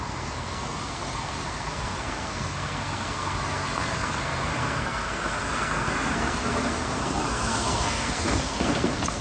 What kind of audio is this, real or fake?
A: fake